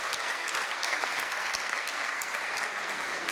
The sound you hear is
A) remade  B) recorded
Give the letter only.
A